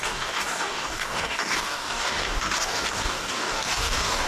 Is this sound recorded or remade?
remade